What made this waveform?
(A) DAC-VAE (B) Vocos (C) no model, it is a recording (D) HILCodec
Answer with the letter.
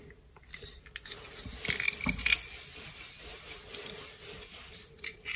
C